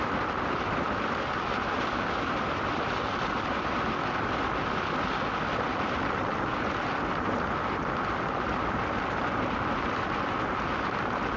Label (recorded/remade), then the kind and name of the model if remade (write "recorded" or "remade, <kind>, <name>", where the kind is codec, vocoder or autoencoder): recorded